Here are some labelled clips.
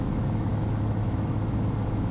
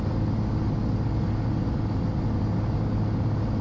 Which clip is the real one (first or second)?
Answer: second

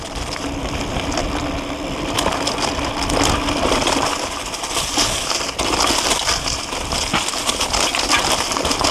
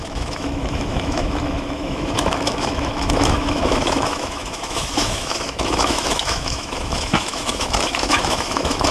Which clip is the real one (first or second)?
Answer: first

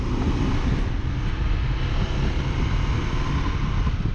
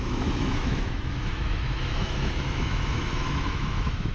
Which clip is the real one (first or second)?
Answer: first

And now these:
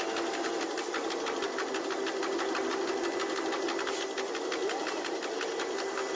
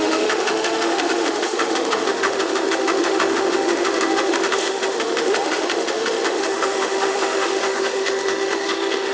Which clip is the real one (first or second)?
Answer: first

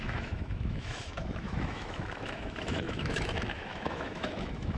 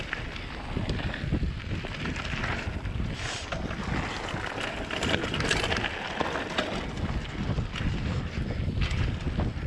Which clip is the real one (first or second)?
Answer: second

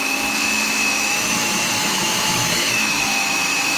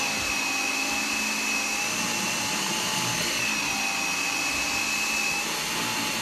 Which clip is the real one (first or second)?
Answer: second